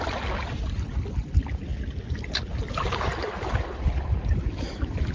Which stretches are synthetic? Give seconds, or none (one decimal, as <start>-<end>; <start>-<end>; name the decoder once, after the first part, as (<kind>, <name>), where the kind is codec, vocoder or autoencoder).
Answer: none